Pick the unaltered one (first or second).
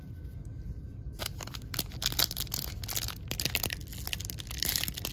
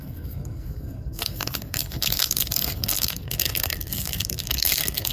first